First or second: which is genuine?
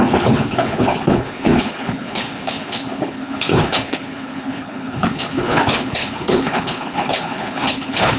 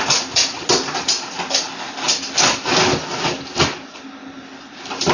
second